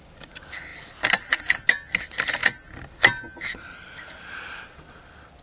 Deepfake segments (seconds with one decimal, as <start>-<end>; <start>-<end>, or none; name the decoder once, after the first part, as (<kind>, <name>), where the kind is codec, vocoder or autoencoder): none